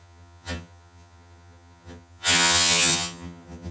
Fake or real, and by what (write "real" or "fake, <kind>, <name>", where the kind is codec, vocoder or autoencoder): fake, vocoder, HiFi-GAN